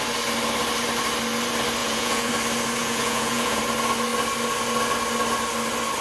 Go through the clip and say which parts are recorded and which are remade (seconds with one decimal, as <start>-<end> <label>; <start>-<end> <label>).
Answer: 0.0-1.8 recorded; 1.8-2.3 remade; 2.3-2.8 recorded; 2.8-3.6 remade; 3.6-6.0 recorded